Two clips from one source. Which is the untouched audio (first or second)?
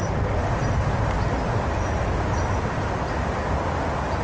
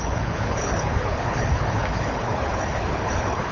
first